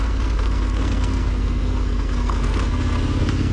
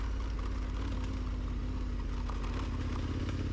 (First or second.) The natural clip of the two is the second